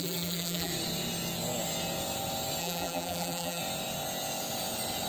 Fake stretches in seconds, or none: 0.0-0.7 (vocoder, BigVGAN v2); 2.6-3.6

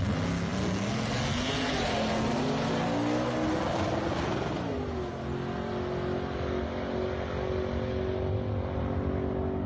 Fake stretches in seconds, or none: none

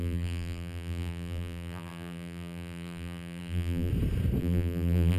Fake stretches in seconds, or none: 0.0-3.9 (vocoder, BigVGAN v2); 4.4-5.2

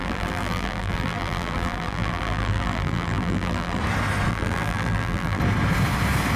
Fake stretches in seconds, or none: 0.0-3.8 (vocoder, BigVGAN v2); 4.3-5.4